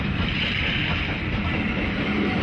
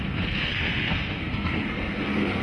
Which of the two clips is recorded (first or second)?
first